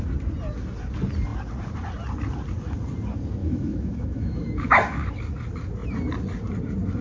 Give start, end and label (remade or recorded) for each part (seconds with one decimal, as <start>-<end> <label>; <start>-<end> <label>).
0.0-3.4 recorded; 3.4-5.1 remade; 5.1-7.0 recorded